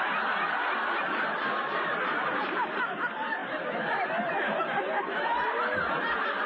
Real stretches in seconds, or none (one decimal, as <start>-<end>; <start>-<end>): 0.0-6.5